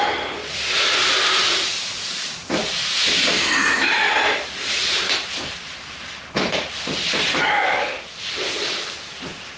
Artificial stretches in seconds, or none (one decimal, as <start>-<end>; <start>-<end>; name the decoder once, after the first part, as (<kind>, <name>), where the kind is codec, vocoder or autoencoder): 2.6-7.5 (vocoder, BigVGAN v2)

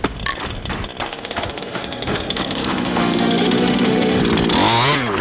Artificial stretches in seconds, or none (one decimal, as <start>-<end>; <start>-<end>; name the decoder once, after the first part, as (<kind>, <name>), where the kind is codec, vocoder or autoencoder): 1.1-4.2 (autoencoder, DAC-VAE)

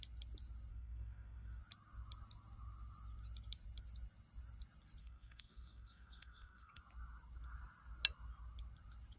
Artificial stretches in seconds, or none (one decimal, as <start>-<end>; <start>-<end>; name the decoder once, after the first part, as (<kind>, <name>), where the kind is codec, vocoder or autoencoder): 0.7-1.6 (codec, SNAC); 5.0-6.8

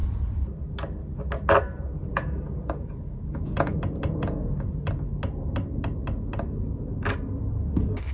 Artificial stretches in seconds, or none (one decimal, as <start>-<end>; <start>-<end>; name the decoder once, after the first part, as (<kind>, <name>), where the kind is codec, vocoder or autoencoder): 2.0-4.9 (vocoder, Vocos)